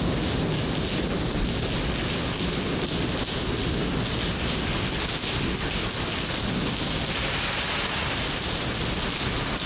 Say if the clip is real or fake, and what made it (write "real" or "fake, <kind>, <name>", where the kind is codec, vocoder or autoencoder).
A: real